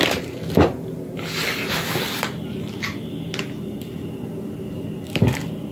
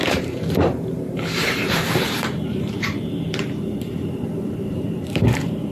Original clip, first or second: first